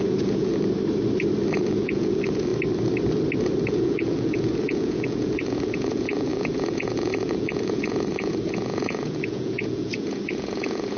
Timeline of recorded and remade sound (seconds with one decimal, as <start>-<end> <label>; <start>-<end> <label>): 0.0-0.5 remade; 0.5-1.5 recorded; 1.5-2.5 remade; 2.5-3.7 recorded; 3.7-11.0 remade